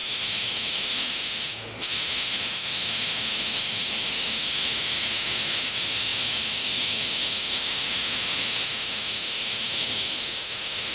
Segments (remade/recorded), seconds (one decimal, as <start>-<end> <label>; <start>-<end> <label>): 0.0-10.9 remade